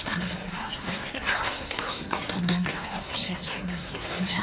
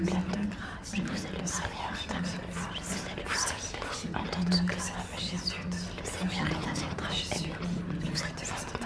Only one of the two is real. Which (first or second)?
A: second